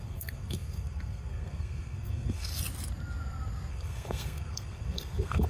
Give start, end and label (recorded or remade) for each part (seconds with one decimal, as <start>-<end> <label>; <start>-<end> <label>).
0.0-2.5 remade; 2.5-3.7 recorded; 3.7-5.5 remade